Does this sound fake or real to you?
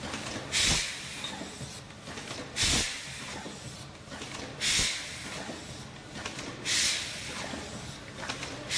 real